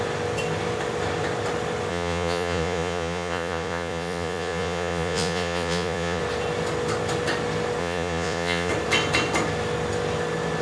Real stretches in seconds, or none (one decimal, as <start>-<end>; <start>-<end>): 0.0-1.9; 6.2-7.8; 8.7-10.6